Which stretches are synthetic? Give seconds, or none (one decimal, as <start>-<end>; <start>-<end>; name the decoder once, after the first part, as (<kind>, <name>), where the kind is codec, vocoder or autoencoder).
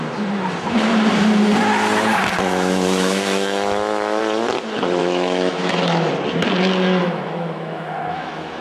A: 2.5-4.2 (autoencoder, DAC-VAE); 5.0-6.1; 7.0-8.6